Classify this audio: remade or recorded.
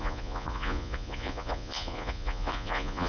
remade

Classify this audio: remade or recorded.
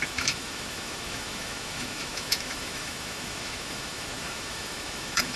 remade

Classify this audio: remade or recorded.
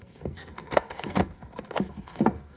remade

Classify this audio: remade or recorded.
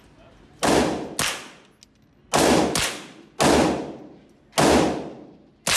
recorded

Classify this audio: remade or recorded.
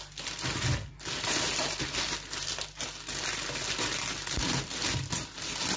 recorded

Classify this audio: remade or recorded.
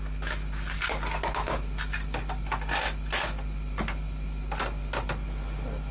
recorded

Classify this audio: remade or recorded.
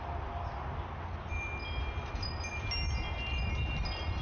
recorded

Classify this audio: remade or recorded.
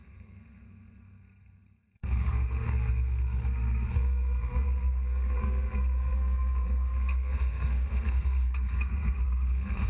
remade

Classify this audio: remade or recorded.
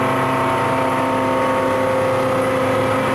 recorded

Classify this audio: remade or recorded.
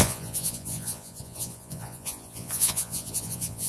remade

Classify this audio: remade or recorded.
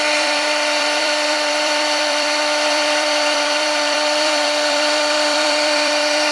remade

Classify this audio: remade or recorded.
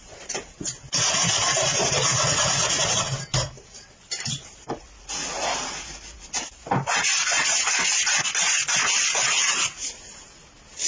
recorded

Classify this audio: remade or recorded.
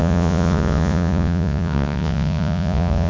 remade